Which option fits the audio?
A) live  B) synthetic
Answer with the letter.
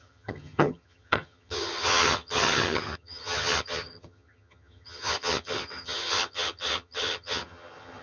B